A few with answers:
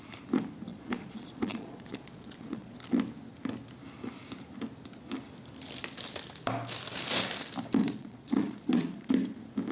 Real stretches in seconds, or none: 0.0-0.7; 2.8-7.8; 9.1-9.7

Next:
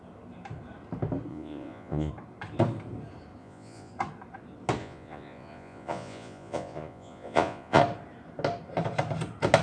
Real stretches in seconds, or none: 0.0-1.3; 2.1-3.4; 3.9-4.8; 7.8-9.6

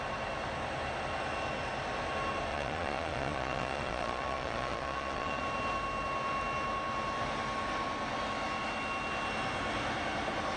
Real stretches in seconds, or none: 0.0-2.5; 5.4-10.6

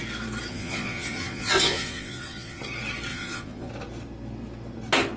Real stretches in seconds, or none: 0.0-0.5; 2.6-3.1; 3.7-5.2

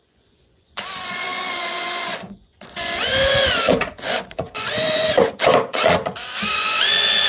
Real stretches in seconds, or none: none